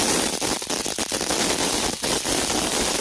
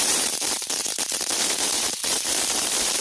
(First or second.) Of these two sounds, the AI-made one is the second